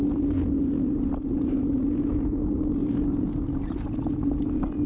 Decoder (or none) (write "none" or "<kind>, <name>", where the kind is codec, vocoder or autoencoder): none